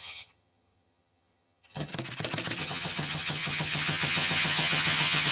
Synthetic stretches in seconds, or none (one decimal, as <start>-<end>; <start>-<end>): 0.0-1.9; 2.6-5.3